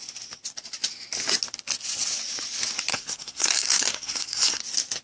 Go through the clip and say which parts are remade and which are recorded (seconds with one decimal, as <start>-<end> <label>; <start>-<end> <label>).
0.0-2.9 recorded; 2.9-4.6 remade; 4.6-5.0 recorded